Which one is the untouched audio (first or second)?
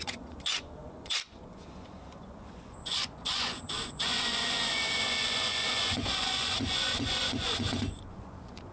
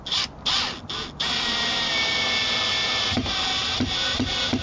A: second